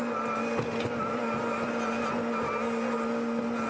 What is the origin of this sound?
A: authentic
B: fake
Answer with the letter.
A